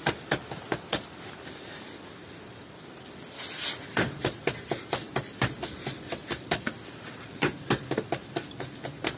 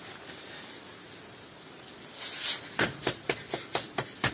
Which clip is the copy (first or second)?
first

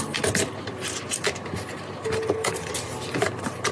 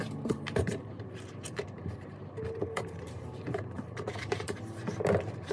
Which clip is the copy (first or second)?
second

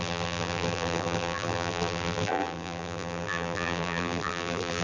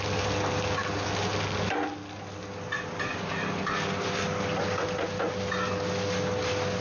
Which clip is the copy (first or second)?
first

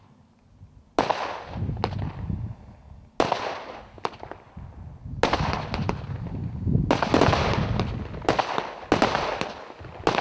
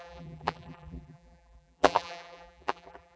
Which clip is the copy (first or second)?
second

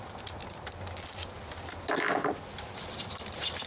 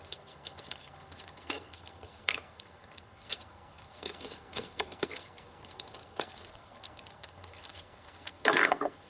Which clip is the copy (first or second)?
second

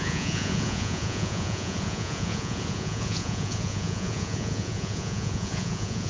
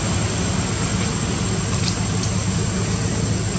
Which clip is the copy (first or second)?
first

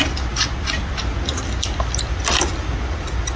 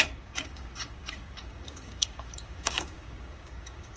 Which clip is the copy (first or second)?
second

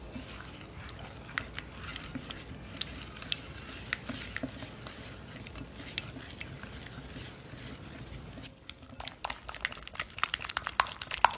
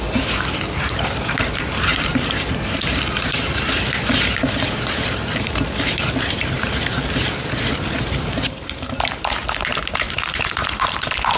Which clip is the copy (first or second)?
second